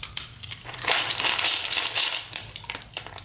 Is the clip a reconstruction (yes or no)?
no